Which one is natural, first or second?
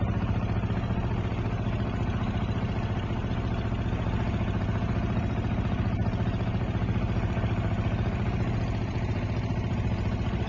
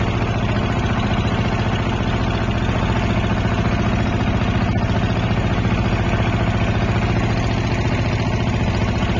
second